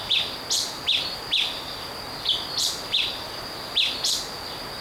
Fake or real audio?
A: real